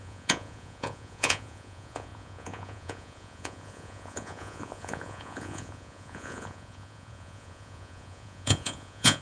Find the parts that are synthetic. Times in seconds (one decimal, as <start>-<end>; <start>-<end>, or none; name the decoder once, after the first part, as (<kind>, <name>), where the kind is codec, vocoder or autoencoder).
0.0-9.2 (vocoder, Vocos)